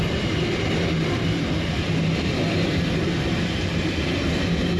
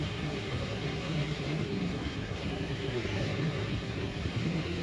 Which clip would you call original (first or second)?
first